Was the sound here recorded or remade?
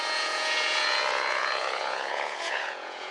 remade